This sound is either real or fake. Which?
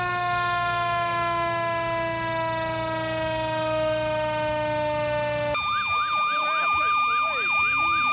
real